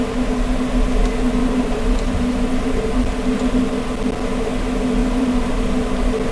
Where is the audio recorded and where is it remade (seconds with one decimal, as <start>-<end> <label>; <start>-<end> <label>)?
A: 0.0-1.4 recorded; 1.4-2.9 remade; 2.9-5.0 recorded; 5.0-5.5 remade; 5.5-6.3 recorded